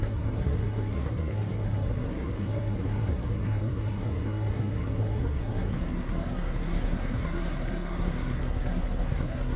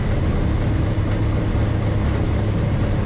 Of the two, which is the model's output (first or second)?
first